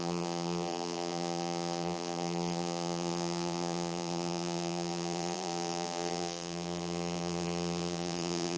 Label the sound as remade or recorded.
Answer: remade